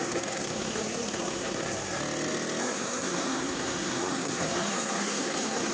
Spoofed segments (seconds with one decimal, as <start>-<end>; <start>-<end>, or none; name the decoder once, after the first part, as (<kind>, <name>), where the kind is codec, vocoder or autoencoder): 0.0-2.0 (codec, SNAC); 2.6-5.7